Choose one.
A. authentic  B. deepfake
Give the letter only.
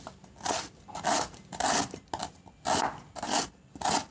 A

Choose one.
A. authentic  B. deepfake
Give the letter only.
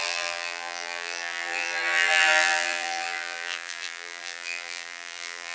B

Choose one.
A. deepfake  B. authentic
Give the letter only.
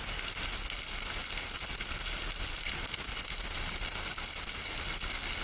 B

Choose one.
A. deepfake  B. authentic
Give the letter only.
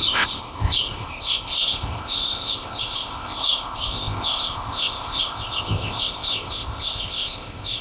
A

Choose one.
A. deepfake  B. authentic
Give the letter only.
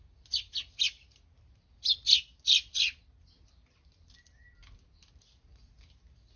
B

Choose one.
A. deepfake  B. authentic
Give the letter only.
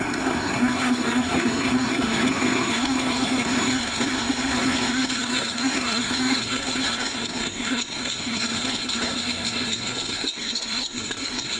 A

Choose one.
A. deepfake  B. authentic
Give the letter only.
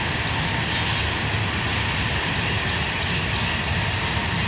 B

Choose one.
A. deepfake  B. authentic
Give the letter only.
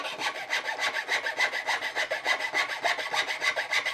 B